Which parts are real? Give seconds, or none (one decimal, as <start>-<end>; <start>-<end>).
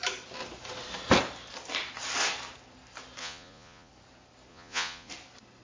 0.0-3.2; 3.9-4.5; 5.1-5.6